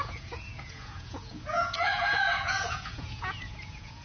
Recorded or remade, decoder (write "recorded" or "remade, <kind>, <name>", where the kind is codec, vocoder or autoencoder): remade, vocoder, Vocos